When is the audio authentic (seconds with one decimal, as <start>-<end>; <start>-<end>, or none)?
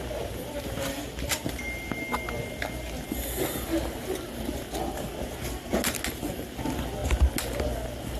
0.0-8.2